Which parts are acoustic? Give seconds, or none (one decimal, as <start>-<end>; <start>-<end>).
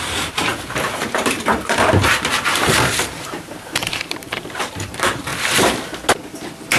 5.3-6.8